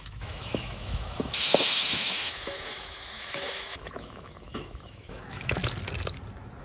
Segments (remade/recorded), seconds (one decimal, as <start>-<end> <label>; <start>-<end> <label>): 0.0-5.6 remade; 5.6-6.6 recorded